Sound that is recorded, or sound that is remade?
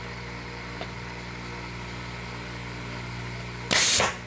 recorded